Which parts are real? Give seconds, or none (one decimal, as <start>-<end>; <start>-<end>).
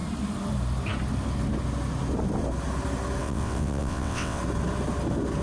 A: 0.0-3.2; 4.4-5.4